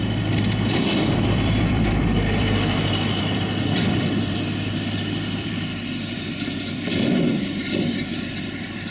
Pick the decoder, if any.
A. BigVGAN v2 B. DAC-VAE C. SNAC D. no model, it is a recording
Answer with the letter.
A